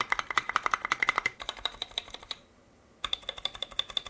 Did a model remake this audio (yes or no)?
yes